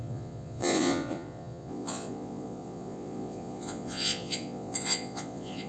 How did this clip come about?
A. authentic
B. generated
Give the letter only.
B